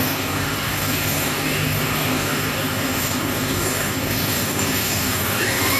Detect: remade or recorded remade